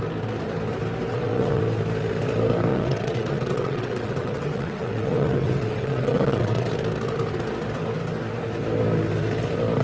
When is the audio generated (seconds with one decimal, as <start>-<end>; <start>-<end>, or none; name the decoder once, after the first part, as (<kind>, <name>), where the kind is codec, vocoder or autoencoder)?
1.1-1.6 (vocoder, WaveNeXt); 2.7-6.7